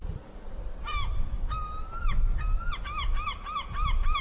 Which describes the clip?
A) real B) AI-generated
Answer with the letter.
A